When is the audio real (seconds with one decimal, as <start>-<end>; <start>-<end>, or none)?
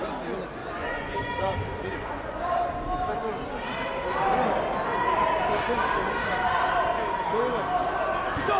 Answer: 0.0-0.6; 2.7-8.6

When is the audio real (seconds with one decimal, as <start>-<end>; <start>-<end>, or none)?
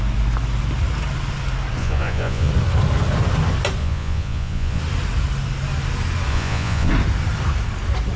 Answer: 0.0-1.8; 2.5-3.8; 4.8-6.3; 6.9-8.2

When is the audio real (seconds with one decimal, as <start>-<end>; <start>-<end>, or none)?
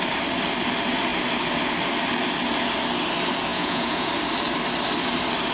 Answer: 0.0-3.5; 4.1-5.5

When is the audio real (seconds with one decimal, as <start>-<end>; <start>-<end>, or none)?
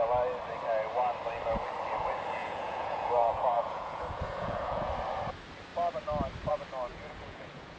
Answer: 0.0-2.4; 4.9-6.9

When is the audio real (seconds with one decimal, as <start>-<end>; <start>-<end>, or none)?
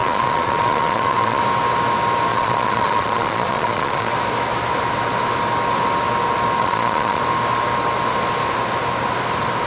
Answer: 1.4-2.3; 4.1-6.6; 7.2-9.7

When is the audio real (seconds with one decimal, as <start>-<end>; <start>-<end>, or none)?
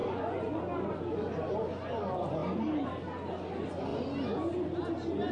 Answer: 0.6-5.3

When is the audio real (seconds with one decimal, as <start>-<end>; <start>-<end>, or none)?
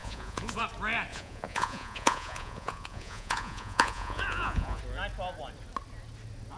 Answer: 0.6-1.1; 4.8-6.6